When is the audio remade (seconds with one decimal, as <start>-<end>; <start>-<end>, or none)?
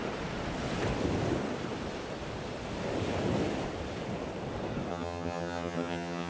4.9-6.3